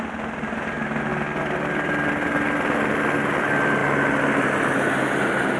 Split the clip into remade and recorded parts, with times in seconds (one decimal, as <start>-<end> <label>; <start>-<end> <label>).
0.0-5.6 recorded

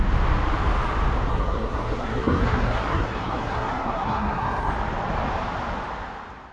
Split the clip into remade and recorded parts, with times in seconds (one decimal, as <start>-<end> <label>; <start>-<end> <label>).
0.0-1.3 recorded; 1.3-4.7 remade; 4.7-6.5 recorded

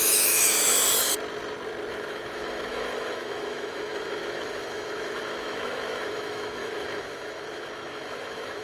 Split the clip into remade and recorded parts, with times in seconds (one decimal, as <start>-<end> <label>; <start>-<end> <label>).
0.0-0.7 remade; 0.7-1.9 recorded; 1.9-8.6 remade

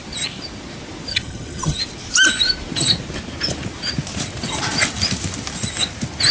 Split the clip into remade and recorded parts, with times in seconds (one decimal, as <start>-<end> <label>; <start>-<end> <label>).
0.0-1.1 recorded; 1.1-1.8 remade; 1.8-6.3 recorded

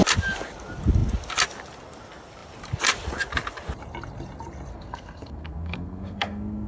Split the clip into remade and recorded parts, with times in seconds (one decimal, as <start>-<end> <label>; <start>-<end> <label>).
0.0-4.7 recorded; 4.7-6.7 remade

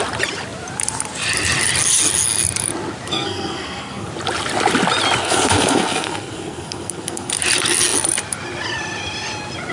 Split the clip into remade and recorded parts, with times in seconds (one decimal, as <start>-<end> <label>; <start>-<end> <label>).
0.0-3.1 recorded; 3.1-4.1 remade; 4.1-5.2 recorded; 5.2-7.3 remade; 7.3-9.7 recorded

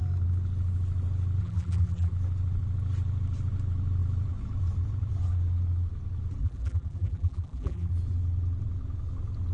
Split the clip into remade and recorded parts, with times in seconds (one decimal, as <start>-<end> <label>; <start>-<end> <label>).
0.0-1.4 recorded; 1.4-2.1 remade; 2.1-6.4 recorded; 6.4-7.9 remade; 7.9-9.5 recorded